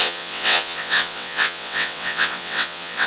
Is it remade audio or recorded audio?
remade